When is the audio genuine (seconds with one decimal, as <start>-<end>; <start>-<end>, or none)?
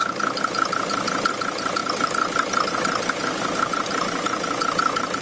0.0-5.2